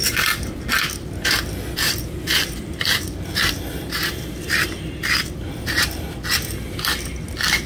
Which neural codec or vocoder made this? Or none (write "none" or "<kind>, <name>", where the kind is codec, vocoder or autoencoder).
none